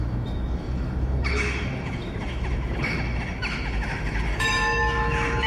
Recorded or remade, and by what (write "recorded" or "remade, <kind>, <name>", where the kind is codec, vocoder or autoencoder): remade, autoencoder, DAC-VAE